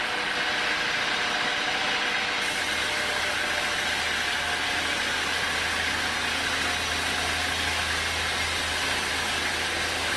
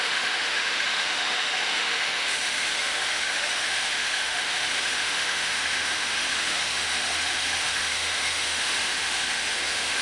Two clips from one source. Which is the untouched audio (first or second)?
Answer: first